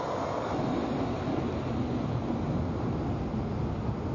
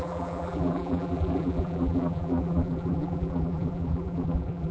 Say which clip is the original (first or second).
first